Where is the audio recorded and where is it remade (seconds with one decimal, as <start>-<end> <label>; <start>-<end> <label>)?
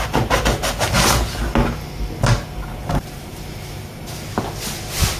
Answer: 0.0-2.8 recorded; 2.8-4.4 remade; 4.4-5.2 recorded